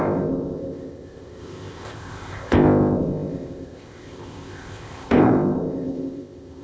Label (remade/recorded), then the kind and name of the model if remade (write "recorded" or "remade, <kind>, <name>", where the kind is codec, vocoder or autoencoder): remade, codec, ZipCodec